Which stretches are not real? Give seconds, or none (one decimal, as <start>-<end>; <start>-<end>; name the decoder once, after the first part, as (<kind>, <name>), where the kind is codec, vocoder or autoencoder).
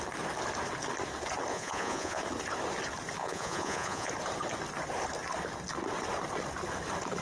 1.5-2.2 (vocoder, Vocos); 3.2-4.1